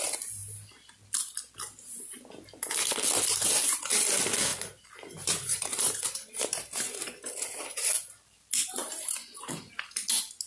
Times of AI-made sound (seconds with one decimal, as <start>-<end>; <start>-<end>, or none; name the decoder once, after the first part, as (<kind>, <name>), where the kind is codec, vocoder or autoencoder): 4.5-7.0 (vocoder, BigVGAN v2); 8.8-9.4